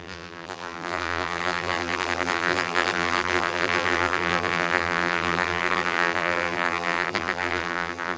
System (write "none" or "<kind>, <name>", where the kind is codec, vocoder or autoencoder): vocoder, BigVGAN v2